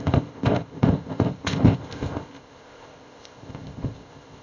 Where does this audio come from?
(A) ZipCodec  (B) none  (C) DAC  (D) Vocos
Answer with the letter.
A